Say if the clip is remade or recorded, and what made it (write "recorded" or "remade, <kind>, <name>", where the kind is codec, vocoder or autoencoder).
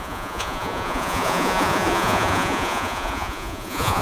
remade, vocoder, Vocos